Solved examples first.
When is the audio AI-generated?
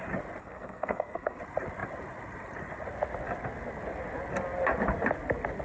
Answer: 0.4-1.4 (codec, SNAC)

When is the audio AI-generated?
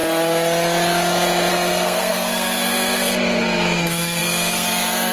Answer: 1.5-5.1 (codec, SNAC)